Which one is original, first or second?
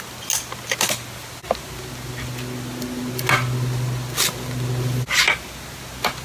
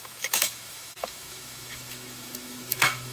first